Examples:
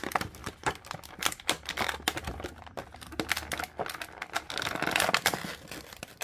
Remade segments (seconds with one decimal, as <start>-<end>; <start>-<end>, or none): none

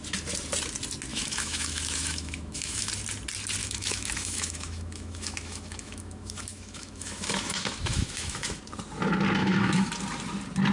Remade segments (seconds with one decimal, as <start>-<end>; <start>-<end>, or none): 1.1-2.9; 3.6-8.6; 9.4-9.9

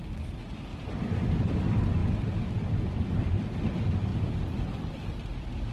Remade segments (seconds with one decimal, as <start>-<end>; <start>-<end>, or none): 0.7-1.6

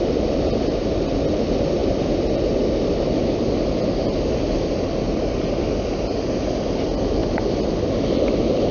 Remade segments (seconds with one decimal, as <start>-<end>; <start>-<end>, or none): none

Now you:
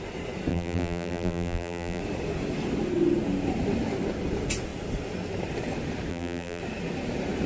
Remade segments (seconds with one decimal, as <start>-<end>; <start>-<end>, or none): 0.5-2.0; 6.1-6.6

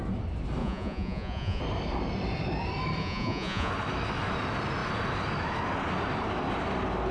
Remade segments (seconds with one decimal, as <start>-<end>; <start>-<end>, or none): 0.6-1.6; 3.0-3.7

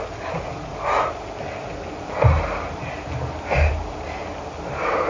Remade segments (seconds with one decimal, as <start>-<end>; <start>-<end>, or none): none